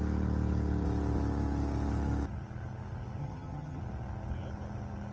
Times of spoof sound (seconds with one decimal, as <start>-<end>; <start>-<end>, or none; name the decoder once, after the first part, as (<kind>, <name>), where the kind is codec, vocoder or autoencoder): 3.2-3.8 (vocoder, HiFi-GAN)